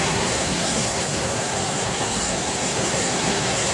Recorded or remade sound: remade